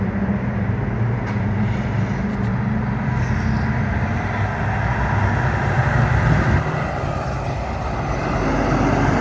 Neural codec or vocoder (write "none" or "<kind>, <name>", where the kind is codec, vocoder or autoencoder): none